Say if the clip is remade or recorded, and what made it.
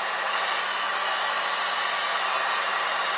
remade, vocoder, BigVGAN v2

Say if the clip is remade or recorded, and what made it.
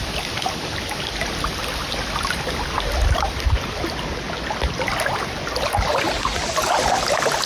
recorded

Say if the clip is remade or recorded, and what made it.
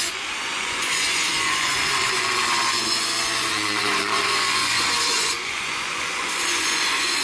remade, vocoder, Vocos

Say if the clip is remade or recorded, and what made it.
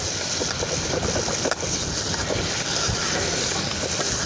recorded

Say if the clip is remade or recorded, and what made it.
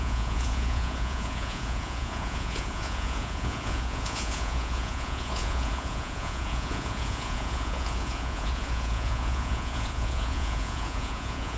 remade, vocoder, Vocos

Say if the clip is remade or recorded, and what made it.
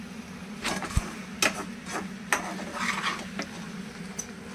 recorded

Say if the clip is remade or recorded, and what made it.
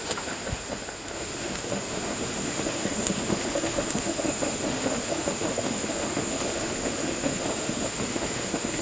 remade, autoencoder, DAC-VAE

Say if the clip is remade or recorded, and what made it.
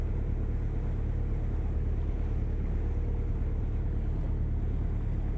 recorded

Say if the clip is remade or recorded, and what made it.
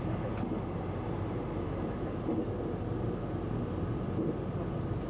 recorded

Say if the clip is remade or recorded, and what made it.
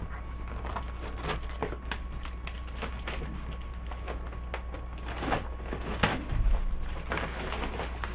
recorded